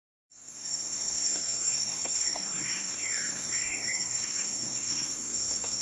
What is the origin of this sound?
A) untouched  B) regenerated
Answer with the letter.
B